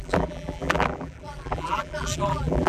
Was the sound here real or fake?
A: fake